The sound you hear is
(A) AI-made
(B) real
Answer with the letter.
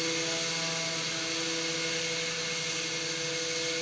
B